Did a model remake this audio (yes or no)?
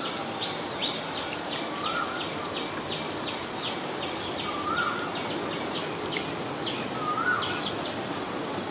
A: no